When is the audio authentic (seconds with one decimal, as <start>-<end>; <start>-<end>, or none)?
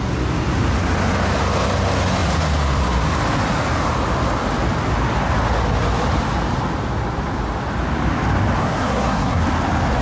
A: 0.0-8.6; 9.4-10.0